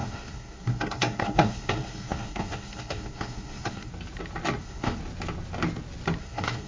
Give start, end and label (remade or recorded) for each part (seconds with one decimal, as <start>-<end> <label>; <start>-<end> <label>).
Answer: 0.0-3.9 remade; 3.9-4.6 recorded; 4.6-5.0 remade; 5.0-6.2 recorded; 6.2-6.7 remade